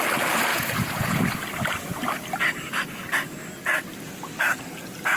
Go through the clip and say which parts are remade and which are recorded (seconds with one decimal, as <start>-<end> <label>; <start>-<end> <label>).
0.0-0.5 recorded; 0.5-1.2 remade; 1.2-5.2 recorded